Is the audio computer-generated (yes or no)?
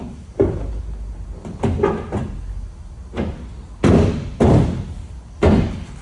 no